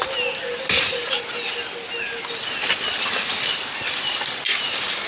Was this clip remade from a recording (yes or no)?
no